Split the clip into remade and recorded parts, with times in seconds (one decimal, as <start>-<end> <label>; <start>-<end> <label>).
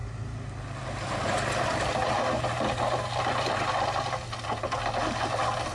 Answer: 0.0-5.7 recorded